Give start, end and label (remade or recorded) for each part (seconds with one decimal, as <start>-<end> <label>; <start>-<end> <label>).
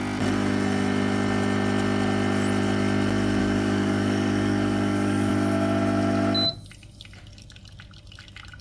0.0-3.4 recorded; 3.4-5.3 remade; 5.3-8.6 recorded